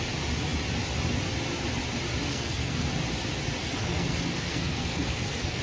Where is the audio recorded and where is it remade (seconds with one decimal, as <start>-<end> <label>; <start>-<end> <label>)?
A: 0.0-2.3 recorded; 2.3-2.9 remade; 2.9-3.6 recorded; 3.6-5.6 remade